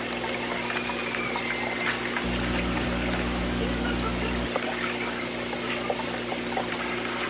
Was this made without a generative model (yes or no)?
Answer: yes